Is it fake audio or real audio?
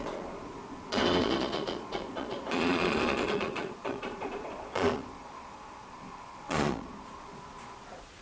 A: fake